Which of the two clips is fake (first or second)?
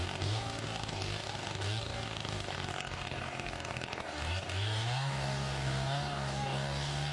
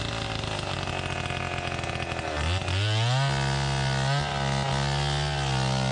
first